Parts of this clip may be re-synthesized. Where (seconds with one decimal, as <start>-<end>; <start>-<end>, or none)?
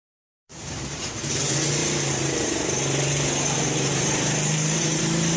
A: 0.4-1.1; 1.8-5.0